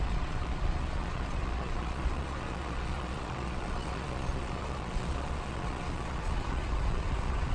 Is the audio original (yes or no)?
no